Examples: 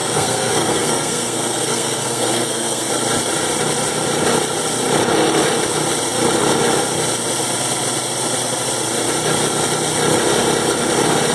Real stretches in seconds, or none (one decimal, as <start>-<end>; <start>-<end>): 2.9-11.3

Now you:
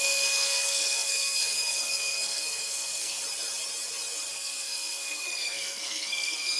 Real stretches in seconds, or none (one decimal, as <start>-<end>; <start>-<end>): 3.2-4.3

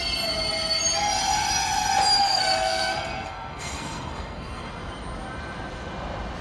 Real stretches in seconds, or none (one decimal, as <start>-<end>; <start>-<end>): 0.0-2.2; 4.7-6.4

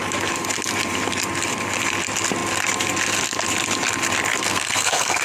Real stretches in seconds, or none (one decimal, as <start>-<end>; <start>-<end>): 0.0-4.4

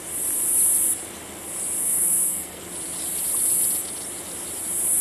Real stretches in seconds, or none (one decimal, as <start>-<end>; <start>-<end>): 0.0-1.8; 2.6-5.0